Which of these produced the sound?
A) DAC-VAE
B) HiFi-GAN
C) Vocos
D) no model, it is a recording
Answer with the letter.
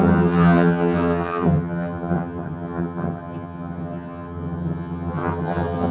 B